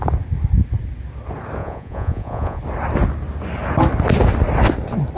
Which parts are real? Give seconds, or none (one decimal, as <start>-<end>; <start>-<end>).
0.0-1.6; 2.6-5.2